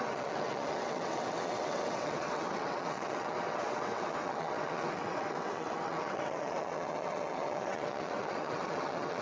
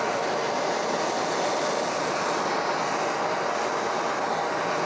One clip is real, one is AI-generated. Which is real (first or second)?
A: second